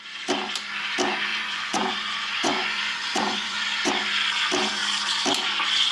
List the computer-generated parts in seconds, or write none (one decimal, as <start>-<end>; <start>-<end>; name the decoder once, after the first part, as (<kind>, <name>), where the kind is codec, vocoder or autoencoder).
1.3-3.9 (vocoder, Vocos)